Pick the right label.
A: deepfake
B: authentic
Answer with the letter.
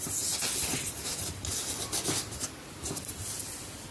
A